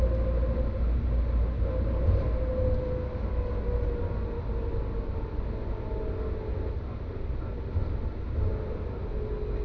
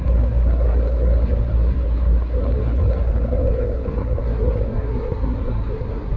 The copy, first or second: second